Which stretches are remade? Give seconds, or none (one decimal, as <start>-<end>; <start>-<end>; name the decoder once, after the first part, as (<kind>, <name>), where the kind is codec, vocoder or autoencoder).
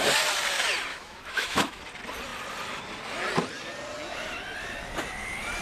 0.9-1.8 (autoencoder, DAC-VAE)